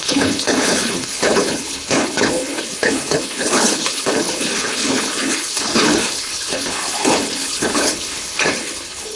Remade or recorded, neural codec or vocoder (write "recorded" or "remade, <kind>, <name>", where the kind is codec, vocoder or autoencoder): remade, codec, HILCodec